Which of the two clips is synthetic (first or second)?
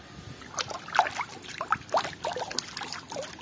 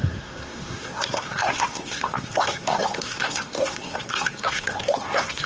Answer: second